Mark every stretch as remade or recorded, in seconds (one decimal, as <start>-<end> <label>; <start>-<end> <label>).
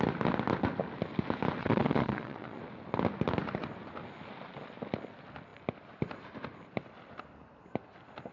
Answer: 0.0-1.6 recorded; 1.6-2.6 remade; 2.6-8.3 recorded